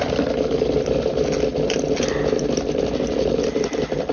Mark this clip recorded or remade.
recorded